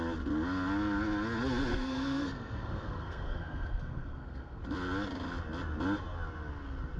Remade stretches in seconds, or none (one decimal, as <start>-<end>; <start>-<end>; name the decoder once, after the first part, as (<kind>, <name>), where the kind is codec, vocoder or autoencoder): 1.7-4.6 (codec, SNAC)